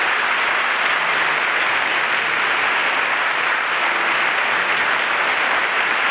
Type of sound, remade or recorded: recorded